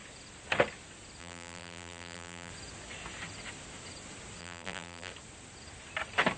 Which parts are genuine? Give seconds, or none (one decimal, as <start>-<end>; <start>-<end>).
0.0-1.2; 2.5-4.4; 5.1-6.4